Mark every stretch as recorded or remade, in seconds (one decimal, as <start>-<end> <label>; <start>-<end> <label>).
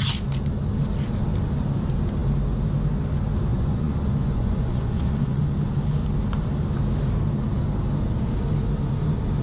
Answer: 0.0-3.5 recorded; 3.5-5.4 remade; 5.4-9.4 recorded